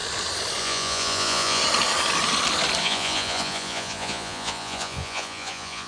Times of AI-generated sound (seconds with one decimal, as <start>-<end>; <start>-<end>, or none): 0.6-1.6; 2.8-5.9